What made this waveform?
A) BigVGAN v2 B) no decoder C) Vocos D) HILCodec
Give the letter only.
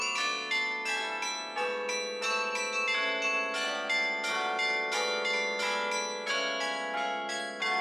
B